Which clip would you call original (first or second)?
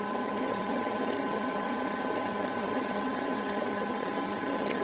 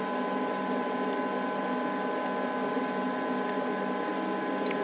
second